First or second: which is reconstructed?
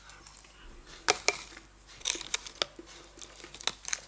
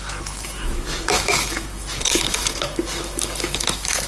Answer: second